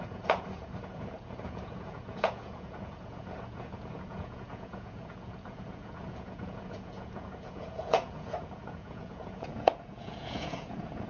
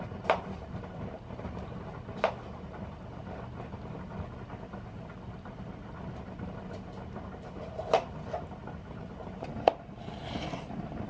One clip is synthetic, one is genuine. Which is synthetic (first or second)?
first